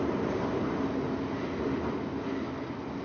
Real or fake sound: real